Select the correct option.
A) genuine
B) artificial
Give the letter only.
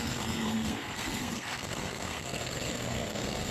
B